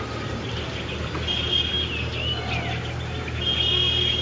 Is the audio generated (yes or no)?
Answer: no